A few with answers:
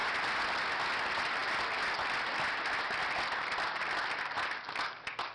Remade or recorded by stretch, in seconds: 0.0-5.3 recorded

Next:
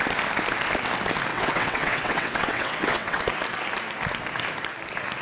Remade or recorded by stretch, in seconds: 0.0-1.3 recorded; 1.3-3.2 remade; 3.2-5.2 recorded

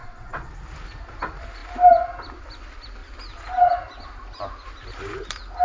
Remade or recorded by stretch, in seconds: 0.0-0.5 remade; 0.5-5.6 recorded

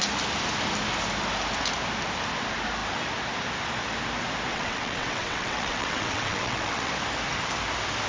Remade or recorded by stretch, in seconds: 0.0-4.5 recorded; 4.5-6.9 remade; 6.9-8.1 recorded

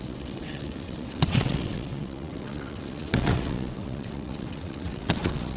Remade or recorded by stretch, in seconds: 0.0-5.6 remade